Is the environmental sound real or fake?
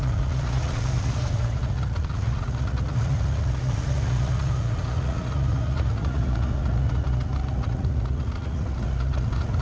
fake